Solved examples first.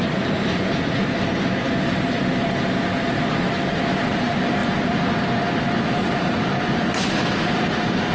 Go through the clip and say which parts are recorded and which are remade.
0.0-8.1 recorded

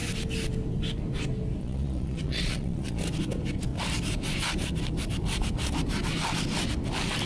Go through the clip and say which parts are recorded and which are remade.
0.0-1.6 recorded; 1.6-3.0 remade; 3.0-7.3 recorded

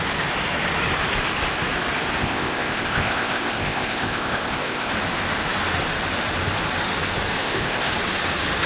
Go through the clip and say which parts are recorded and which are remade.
0.0-2.2 recorded; 2.2-4.9 remade; 4.9-7.4 recorded; 7.4-7.9 remade; 7.9-8.7 recorded

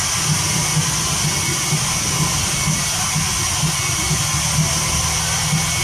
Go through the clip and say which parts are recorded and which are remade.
0.0-5.8 recorded

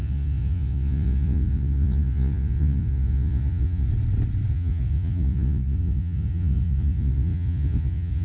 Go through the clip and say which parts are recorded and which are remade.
0.0-3.9 remade; 3.9-4.5 recorded; 4.5-8.2 remade

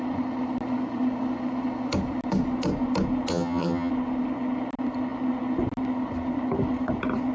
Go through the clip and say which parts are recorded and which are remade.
0.0-3.3 recorded; 3.3-3.9 remade; 3.9-7.3 recorded

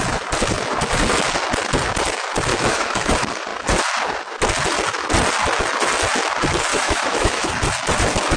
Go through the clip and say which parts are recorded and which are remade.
0.0-2.5 recorded; 2.5-3.1 remade; 3.1-6.7 recorded; 6.7-7.5 remade; 7.5-8.4 recorded

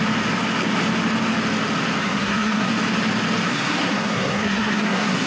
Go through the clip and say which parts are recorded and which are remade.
0.0-2.0 recorded; 2.0-2.7 remade; 2.7-3.5 recorded; 3.5-5.3 remade